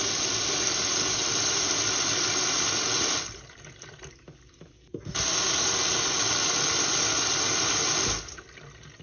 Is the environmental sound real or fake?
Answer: fake